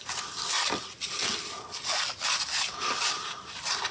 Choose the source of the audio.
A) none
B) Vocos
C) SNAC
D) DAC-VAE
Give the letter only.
A